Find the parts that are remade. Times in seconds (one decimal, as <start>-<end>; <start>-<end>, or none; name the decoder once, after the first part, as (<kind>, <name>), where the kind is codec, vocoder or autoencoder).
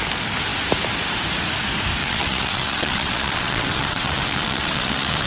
2.0-5.3 (vocoder, WaveNeXt)